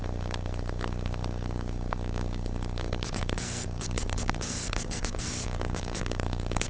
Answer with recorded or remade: remade